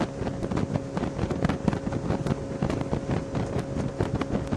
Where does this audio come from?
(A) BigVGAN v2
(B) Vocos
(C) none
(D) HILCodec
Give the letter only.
C